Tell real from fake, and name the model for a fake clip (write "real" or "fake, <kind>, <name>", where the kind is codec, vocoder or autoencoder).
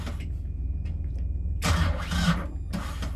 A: real